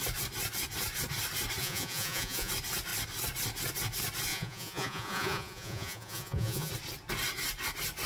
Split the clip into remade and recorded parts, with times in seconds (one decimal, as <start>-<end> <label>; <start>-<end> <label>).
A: 0.0-1.6 recorded; 1.6-2.5 remade; 2.5-4.3 recorded; 4.3-6.7 remade; 6.7-8.1 recorded

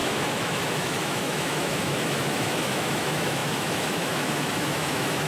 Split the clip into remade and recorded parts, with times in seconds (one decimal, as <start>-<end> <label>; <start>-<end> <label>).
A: 0.0-5.3 remade

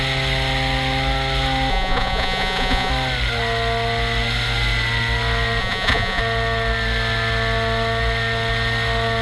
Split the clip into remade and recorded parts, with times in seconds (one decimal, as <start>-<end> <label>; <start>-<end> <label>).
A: 0.0-1.7 recorded; 1.7-2.9 remade; 2.9-5.6 recorded; 5.6-6.2 remade; 6.2-9.2 recorded

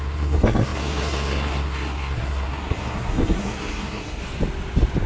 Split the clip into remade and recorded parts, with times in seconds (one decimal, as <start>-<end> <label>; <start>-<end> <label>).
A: 0.0-4.2 remade; 4.2-5.1 recorded

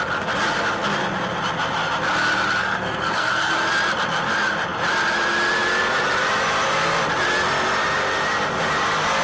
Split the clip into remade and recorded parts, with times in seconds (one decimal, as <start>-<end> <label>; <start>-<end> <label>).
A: 0.0-2.6 recorded; 2.6-3.5 remade; 3.5-9.2 recorded